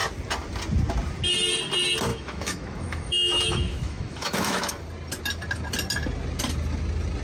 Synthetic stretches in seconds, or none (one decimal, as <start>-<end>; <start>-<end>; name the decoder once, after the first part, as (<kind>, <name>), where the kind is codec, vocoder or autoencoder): 2.1-4.7 (autoencoder, DAC-VAE)